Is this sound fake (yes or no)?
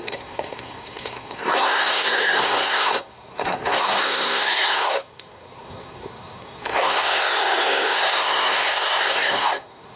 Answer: yes